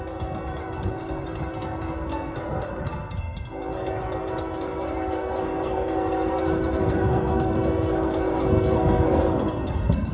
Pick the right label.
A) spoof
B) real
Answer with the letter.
A